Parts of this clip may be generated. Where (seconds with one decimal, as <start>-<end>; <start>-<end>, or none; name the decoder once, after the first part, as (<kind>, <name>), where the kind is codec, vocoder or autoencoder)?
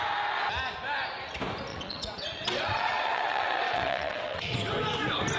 1.7-4.7 (vocoder, WaveNeXt)